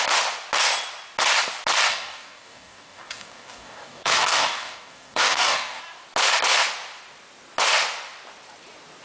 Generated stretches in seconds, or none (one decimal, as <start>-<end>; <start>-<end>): 1.9-5.8